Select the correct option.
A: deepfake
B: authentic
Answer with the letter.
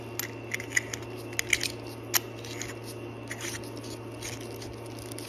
B